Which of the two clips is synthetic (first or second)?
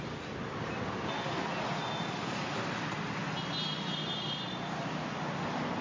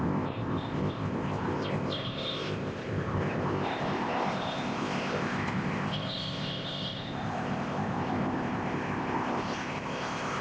second